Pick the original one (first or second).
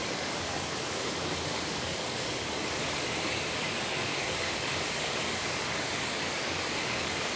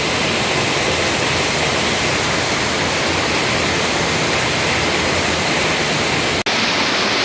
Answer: second